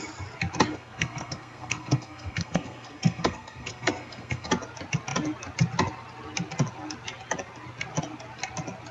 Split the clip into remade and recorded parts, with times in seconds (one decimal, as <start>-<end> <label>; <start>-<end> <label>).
0.0-0.7 recorded; 0.7-4.5 remade; 4.5-8.9 recorded